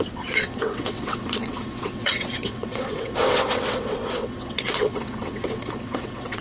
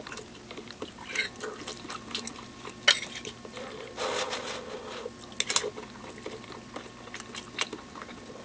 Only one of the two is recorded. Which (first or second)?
second